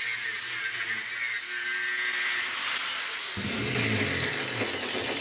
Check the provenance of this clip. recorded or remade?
recorded